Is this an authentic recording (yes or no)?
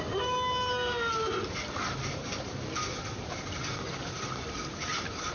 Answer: yes